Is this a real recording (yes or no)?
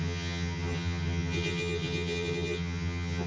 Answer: no